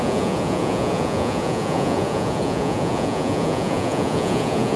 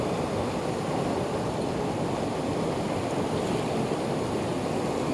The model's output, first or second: first